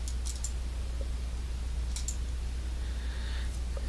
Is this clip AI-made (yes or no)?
no